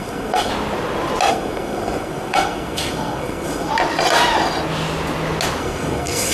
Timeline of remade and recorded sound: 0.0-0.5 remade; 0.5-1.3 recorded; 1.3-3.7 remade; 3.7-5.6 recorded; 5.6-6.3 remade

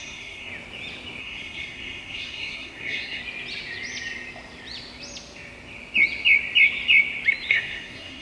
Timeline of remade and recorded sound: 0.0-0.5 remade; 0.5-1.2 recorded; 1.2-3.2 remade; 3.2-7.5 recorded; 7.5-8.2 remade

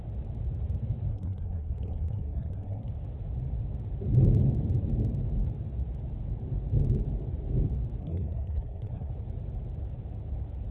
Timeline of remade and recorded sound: 0.0-1.1 recorded; 1.1-2.9 remade; 2.9-8.0 recorded; 8.0-9.1 remade; 9.1-10.7 recorded